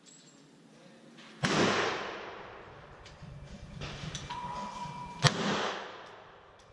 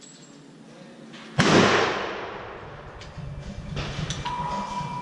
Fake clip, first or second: first